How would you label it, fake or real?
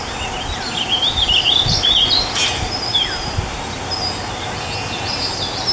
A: real